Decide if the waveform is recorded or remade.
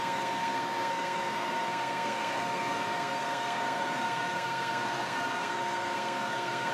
remade